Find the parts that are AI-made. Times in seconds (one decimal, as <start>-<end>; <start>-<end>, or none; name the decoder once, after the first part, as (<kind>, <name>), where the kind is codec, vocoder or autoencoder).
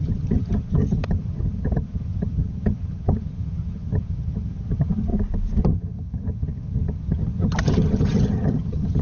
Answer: 0.0-5.1 (vocoder, HiFi-GAN); 5.6-9.0